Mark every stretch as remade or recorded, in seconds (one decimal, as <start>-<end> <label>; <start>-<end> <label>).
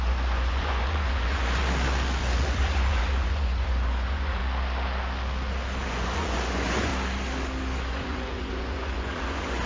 0.0-1.6 remade; 1.6-2.2 recorded; 2.2-4.4 remade; 4.4-5.9 recorded; 5.9-6.9 remade; 6.9-7.8 recorded; 7.8-9.7 remade